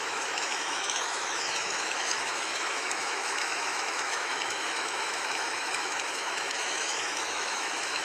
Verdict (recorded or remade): remade